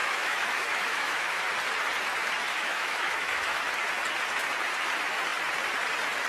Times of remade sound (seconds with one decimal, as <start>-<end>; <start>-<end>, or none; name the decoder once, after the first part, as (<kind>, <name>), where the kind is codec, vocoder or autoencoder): 0.0-1.4 (autoencoder, DAC-VAE); 2.5-3.6